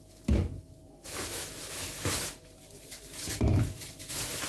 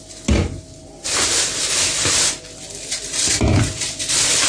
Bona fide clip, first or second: second